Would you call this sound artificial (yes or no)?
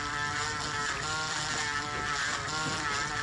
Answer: no